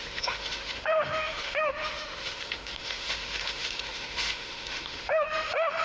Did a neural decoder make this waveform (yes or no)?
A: yes